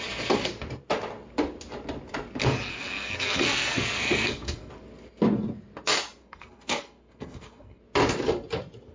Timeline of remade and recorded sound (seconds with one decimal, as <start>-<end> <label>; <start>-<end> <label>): 0.0-2.7 recorded; 2.7-4.7 remade; 4.7-6.2 recorded; 6.2-7.8 remade; 7.8-8.9 recorded